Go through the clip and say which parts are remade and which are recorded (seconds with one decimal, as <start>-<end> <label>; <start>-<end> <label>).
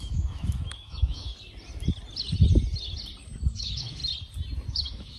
0.0-1.3 remade; 1.3-3.5 recorded; 3.5-4.0 remade; 4.0-4.7 recorded; 4.7-5.2 remade